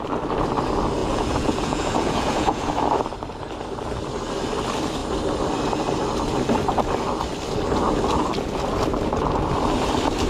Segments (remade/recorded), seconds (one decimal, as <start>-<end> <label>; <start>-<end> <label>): 0.0-1.0 recorded; 1.0-2.7 remade; 2.7-10.3 recorded